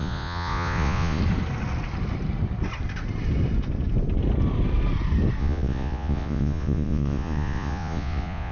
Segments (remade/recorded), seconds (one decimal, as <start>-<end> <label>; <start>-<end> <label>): 0.0-1.2 remade; 1.2-5.4 recorded; 5.4-8.5 remade